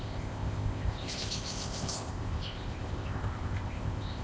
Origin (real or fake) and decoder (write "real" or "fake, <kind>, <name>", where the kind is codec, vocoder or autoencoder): fake, codec, ZipCodec